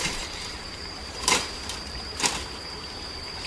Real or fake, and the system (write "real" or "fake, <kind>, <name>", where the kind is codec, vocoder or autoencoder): fake, vocoder, BigVGAN v2